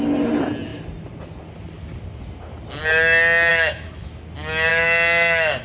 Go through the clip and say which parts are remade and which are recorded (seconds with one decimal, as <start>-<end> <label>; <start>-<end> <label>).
0.0-3.5 recorded; 3.5-4.1 remade; 4.1-4.7 recorded; 4.7-5.6 remade

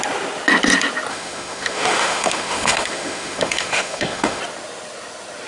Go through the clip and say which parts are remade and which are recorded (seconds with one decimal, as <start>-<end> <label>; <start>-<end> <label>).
0.0-1.1 recorded; 1.1-4.4 remade; 4.4-5.5 recorded

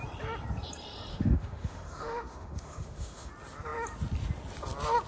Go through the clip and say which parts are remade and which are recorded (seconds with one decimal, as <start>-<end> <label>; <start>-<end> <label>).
0.0-1.1 recorded; 1.1-3.3 remade; 3.3-5.1 recorded